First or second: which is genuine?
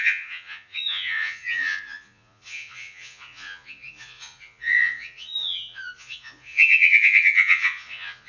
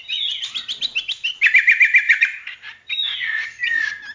second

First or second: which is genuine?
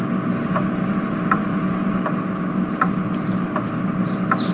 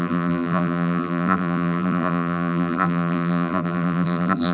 first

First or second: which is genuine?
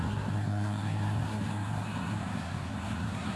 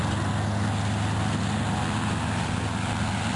second